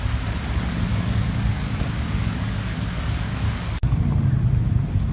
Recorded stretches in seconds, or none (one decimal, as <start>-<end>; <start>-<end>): 0.0-0.9; 4.0-5.1